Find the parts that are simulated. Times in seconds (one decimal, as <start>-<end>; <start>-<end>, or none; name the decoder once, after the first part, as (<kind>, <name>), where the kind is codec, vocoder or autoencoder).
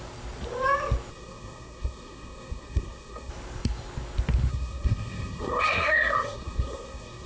1.1-3.3 (codec, SNAC); 4.5-7.3